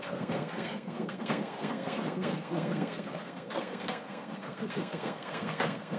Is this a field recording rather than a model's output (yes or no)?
no